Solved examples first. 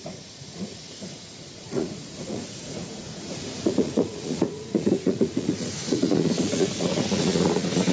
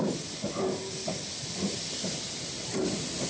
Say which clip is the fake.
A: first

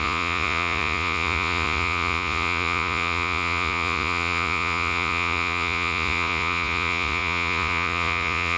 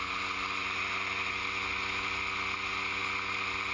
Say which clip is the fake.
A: first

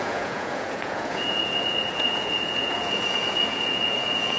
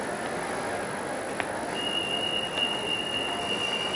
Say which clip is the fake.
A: first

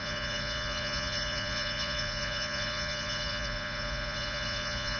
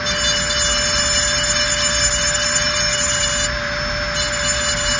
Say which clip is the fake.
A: first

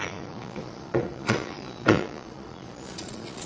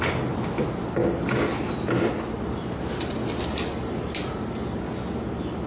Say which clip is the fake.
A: first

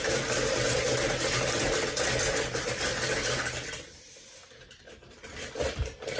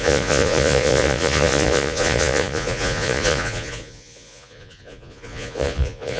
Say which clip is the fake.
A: second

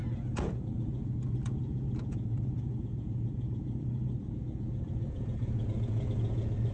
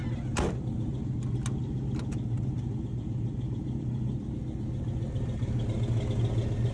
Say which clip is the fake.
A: first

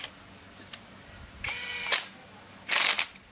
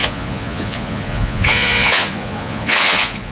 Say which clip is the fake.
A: second